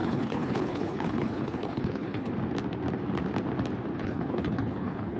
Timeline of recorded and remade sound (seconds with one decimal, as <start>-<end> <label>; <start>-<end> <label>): 0.0-2.3 remade; 2.3-3.9 recorded; 3.9-5.2 remade